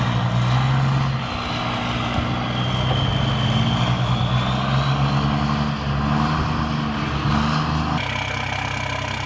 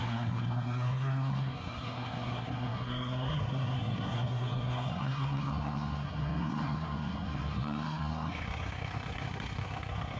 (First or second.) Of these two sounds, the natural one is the first